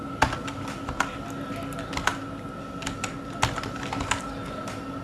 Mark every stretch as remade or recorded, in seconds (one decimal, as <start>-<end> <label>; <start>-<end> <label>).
0.0-5.0 recorded

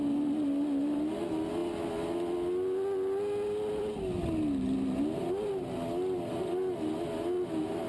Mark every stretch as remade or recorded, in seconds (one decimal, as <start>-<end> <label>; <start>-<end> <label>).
0.0-7.9 recorded

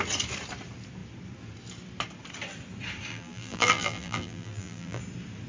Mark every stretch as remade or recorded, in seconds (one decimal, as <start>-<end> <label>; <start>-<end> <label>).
0.0-3.1 recorded; 3.1-5.0 remade; 5.0-5.5 recorded

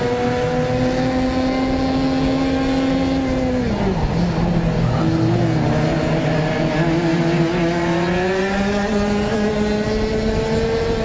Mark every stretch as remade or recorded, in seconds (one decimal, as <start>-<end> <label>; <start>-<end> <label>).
0.0-11.0 recorded